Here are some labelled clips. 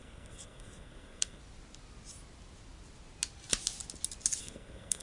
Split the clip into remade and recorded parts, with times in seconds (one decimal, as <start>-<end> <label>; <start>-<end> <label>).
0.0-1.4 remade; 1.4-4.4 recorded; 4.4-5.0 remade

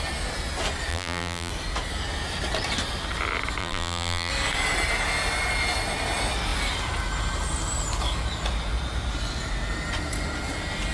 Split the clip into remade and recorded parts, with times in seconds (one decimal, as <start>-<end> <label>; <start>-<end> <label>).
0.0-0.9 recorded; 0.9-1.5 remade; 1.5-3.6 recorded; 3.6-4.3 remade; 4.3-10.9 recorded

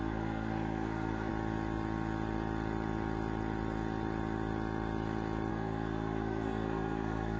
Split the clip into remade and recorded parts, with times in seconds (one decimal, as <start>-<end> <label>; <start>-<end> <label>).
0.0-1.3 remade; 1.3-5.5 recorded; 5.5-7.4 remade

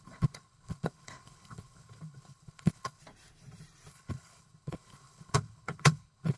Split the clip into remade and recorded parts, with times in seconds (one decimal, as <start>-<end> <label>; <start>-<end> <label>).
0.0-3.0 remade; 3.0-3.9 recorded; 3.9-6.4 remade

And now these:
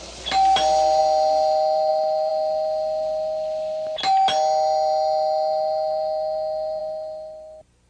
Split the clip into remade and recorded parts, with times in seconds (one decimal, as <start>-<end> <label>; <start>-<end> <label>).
0.0-7.9 recorded